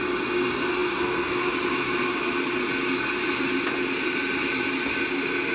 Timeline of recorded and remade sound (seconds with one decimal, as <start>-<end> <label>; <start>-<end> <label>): 0.0-5.5 recorded